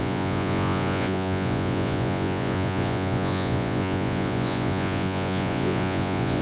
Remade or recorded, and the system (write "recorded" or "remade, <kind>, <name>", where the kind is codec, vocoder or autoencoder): remade, vocoder, Vocos